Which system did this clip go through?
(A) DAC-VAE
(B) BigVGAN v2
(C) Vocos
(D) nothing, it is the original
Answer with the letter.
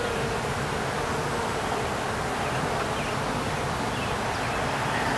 D